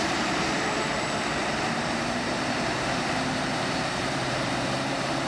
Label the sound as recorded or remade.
remade